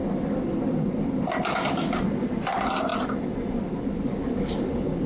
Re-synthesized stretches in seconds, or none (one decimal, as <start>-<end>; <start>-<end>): none